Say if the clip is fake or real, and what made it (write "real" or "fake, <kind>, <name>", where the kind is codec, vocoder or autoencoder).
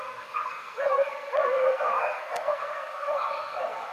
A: fake, codec, SNAC